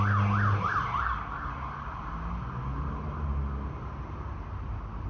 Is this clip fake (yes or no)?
no